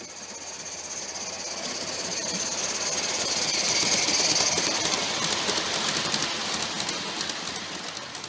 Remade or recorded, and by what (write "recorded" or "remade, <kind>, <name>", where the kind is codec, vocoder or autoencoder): recorded